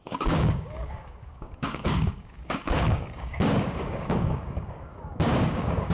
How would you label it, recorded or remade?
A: remade